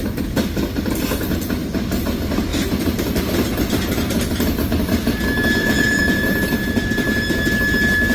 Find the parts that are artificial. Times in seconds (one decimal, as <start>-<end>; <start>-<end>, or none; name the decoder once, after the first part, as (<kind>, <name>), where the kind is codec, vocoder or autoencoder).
5.6-6.4 (vocoder, Vocos)